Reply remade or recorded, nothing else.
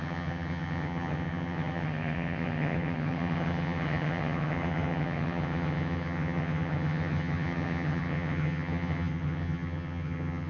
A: remade